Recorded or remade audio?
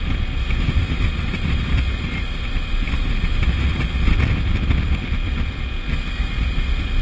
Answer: recorded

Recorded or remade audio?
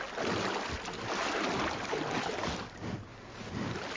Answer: recorded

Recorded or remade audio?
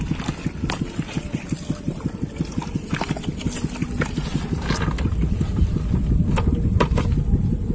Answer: recorded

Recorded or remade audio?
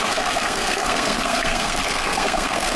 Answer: remade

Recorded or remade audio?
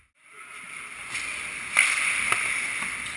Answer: recorded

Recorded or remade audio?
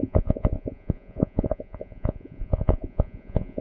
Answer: remade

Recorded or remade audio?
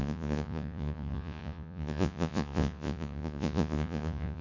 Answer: remade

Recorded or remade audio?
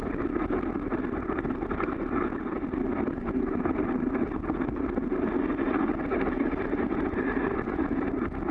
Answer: remade